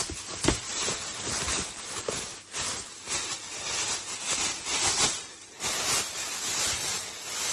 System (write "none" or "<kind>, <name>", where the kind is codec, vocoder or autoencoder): none